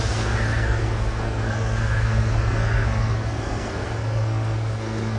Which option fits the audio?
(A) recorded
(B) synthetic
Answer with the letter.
B